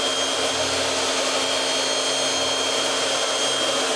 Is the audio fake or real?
real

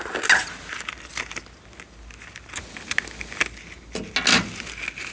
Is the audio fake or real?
real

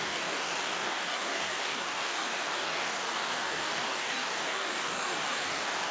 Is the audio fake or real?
fake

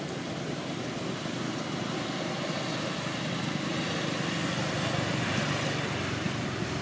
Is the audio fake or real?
real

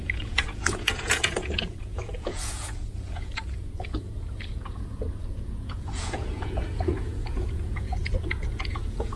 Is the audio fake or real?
fake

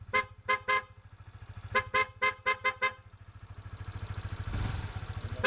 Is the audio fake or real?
real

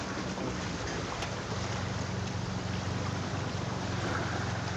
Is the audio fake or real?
real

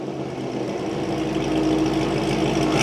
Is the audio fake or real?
real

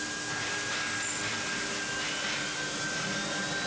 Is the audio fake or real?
real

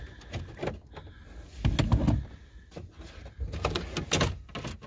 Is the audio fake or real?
real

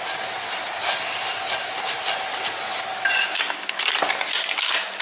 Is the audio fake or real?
real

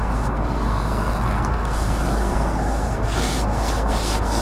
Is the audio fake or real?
fake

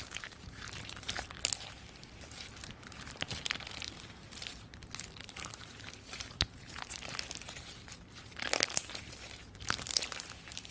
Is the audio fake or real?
fake